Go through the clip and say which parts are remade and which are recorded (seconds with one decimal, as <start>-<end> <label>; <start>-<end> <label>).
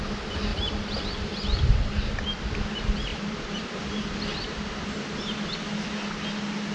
0.0-0.5 recorded; 0.5-1.9 remade; 1.9-3.1 recorded; 3.1-3.9 remade; 3.9-6.7 recorded